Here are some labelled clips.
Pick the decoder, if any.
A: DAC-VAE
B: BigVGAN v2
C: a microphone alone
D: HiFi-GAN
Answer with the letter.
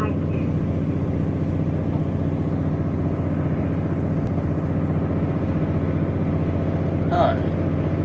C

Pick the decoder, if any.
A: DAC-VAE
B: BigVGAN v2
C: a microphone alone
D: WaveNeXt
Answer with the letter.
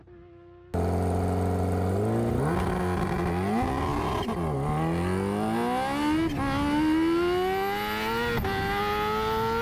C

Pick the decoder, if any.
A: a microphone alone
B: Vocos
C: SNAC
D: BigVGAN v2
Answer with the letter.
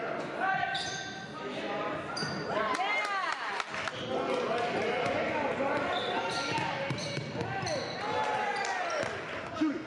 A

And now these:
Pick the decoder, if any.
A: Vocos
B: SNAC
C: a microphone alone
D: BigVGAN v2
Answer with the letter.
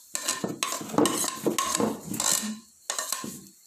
C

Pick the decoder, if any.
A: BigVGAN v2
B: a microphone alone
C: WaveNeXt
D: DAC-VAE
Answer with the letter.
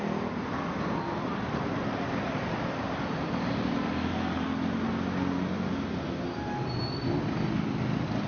B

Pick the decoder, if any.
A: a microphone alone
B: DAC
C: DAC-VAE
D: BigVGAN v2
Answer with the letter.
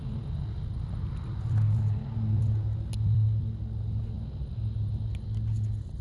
A